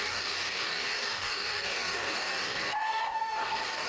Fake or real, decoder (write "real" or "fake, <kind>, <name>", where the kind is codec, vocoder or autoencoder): fake, codec, DAC